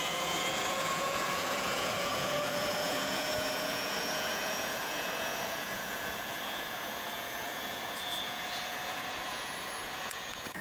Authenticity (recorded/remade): remade